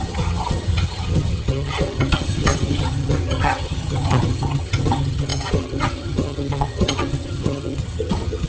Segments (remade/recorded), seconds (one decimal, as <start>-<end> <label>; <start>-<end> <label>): 0.0-8.5 remade